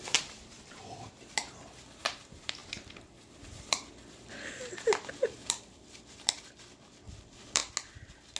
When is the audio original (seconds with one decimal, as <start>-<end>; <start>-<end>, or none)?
7.6-8.4